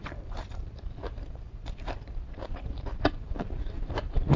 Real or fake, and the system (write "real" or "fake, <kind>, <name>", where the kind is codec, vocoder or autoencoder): fake, vocoder, BigVGAN v2